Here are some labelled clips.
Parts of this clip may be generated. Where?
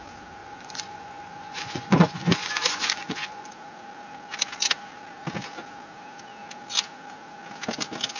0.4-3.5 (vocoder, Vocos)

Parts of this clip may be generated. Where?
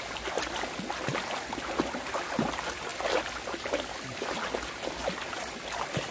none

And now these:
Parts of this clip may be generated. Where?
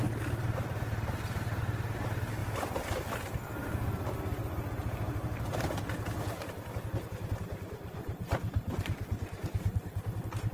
7.5-9.8 (vocoder, BigVGAN v2)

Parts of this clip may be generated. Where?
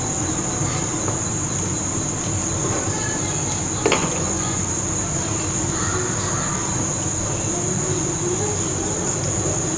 4.0-4.6 (vocoder, Vocos)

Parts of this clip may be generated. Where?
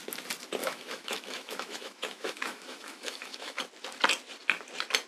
0.6-3.6 (autoencoder, DAC-VAE)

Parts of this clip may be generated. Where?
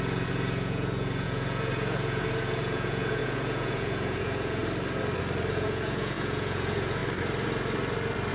0.0-4.6 (vocoder, Vocos); 5.5-7.0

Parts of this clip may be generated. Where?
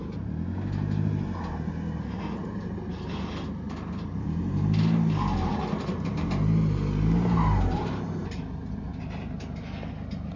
none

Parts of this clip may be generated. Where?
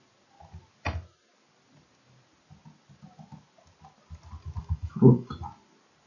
4.6-5.3 (autoencoder, DAC-VAE)